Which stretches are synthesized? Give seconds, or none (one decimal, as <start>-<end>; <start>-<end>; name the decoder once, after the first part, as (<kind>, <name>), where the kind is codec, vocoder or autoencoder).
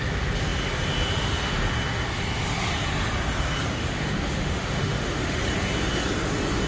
3.8-5.4 (autoencoder, DAC-VAE)